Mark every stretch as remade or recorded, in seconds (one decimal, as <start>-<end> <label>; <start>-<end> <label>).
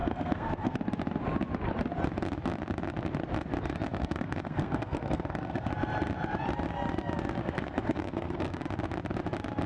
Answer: 0.0-0.8 remade; 0.8-3.9 recorded; 3.9-5.7 remade; 5.7-7.4 recorded; 7.4-8.6 remade; 8.6-9.7 recorded